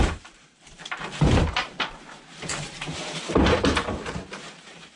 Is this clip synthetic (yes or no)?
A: yes